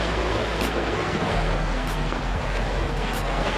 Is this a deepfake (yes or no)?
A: yes